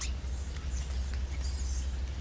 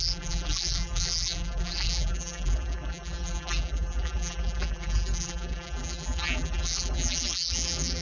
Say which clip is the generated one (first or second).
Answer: second